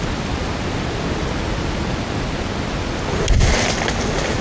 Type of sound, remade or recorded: recorded